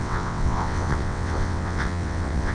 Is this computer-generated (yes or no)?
yes